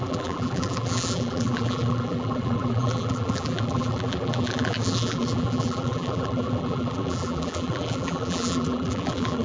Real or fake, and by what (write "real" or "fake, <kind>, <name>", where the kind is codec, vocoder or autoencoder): fake, vocoder, BigVGAN v2